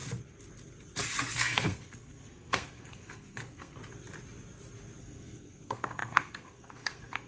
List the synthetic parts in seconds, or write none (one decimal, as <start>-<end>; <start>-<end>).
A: 1.3-3.8; 5.0-7.3